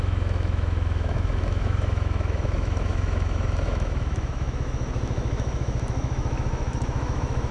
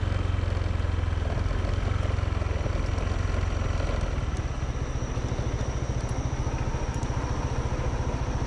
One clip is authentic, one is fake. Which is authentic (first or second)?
second